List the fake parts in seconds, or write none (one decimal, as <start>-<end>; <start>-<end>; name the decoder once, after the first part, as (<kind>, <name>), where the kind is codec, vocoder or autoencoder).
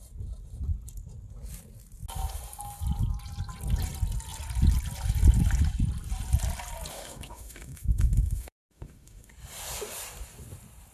6.9-9.3 (autoencoder, DAC-VAE)